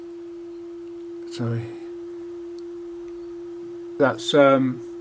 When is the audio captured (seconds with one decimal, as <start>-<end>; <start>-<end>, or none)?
0.0-1.8